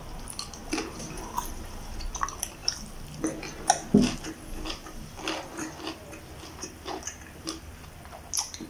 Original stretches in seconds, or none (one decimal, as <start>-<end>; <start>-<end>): 0.0-8.7